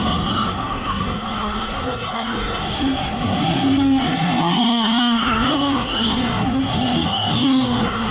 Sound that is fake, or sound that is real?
fake